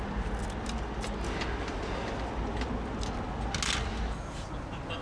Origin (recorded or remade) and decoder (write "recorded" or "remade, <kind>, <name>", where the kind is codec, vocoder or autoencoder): recorded